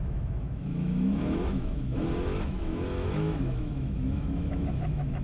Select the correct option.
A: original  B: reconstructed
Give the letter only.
B